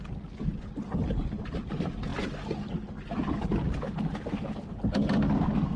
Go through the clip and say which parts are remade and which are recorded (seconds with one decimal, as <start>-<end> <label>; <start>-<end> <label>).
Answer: 0.0-5.8 recorded